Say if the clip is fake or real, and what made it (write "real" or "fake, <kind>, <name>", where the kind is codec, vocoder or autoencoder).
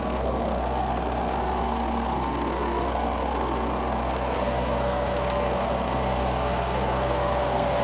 fake, codec, SNAC